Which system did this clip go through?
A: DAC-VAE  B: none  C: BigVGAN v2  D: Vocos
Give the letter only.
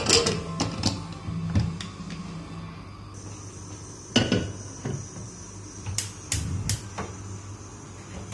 B